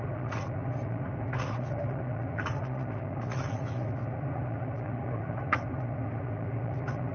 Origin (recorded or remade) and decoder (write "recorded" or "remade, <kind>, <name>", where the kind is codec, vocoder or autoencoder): remade, vocoder, Vocos